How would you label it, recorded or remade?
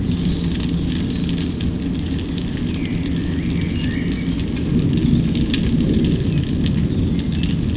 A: recorded